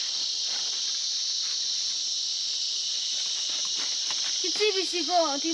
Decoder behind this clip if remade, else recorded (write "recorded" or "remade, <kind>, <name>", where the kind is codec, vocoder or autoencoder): recorded